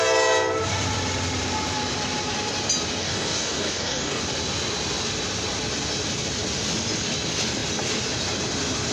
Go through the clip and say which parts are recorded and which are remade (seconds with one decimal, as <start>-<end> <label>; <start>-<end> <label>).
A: 0.0-3.0 recorded; 3.0-4.2 remade; 4.2-8.9 recorded